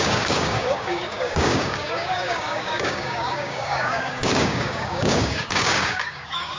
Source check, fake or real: fake